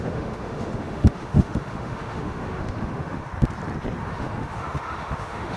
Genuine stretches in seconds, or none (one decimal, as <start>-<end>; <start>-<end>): 3.3-4.0